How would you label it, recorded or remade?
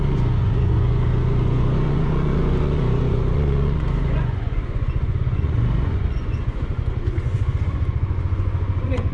remade